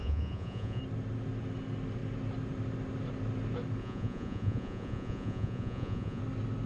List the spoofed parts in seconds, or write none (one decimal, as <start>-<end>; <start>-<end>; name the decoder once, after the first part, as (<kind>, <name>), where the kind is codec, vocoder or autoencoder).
0.0-0.8 (vocoder, Vocos); 3.8-6.2